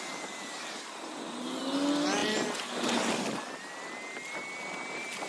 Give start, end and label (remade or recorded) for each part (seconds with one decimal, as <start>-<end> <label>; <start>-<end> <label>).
0.0-5.3 recorded